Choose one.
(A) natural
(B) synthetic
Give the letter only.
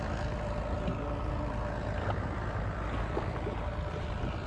A